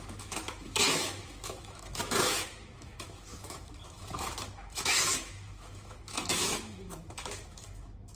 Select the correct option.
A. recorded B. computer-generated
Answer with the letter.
B